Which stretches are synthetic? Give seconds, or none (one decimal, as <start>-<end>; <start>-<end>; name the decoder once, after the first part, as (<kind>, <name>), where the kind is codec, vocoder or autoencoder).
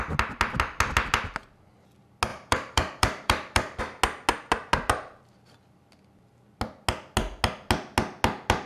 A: 2.3-3.8 (vocoder, BigVGAN v2)